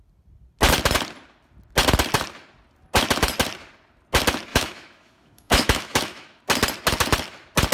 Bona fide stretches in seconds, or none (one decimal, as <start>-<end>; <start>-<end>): 0.0-4.5; 6.4-7.7